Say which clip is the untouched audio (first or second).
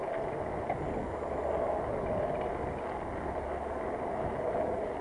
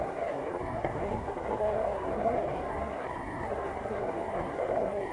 first